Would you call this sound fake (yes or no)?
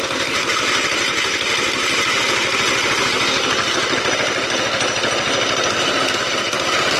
no